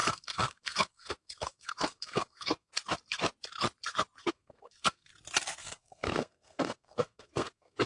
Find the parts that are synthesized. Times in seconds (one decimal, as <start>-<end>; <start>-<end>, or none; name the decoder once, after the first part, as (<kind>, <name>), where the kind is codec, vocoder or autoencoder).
0.0-2.7 (codec, SNAC); 4.2-5.1; 5.6-7.9